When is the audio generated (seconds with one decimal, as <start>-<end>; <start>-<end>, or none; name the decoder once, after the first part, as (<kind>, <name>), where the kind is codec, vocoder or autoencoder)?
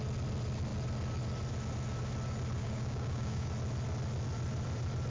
2.6-3.5 (codec, DAC)